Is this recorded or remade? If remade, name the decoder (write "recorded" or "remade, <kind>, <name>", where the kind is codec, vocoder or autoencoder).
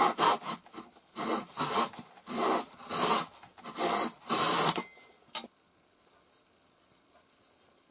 recorded